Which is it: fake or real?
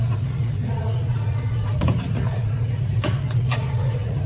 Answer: fake